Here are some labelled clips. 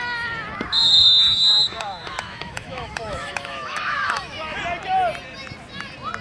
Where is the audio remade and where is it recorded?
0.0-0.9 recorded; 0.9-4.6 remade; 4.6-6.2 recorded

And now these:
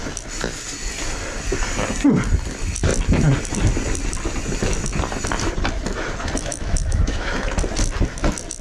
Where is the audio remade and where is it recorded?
0.0-6.5 recorded; 6.5-7.3 remade; 7.3-8.6 recorded

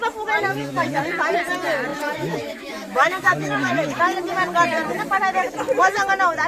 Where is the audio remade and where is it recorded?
0.0-0.5 recorded; 0.5-1.0 remade; 1.0-1.9 recorded; 1.9-4.0 remade; 4.0-6.5 recorded

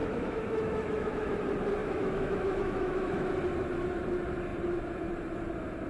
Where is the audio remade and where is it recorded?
0.0-1.4 remade; 1.4-1.8 recorded; 1.8-3.3 remade; 3.3-5.9 recorded

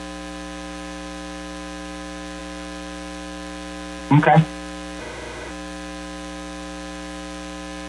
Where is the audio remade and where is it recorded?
0.0-5.0 recorded; 5.0-5.5 remade; 5.5-7.9 recorded

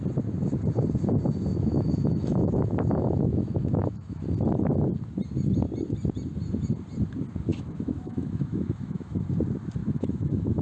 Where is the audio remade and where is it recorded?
0.0-1.5 recorded; 1.5-4.2 remade; 4.2-7.5 recorded; 7.5-9.2 remade; 9.2-9.8 recorded; 9.8-10.6 remade

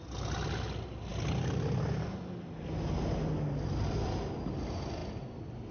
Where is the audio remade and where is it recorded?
0.0-5.7 recorded